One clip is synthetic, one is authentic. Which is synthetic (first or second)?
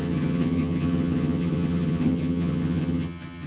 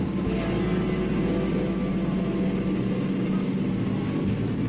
first